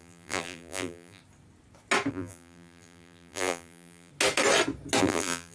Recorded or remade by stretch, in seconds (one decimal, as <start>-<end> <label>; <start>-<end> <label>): 0.0-1.2 remade; 1.2-2.1 recorded; 2.1-4.1 remade; 4.1-5.0 recorded; 5.0-5.5 remade